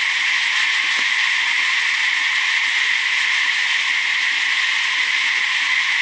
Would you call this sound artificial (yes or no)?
no